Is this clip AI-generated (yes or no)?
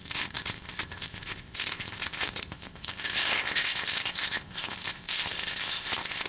yes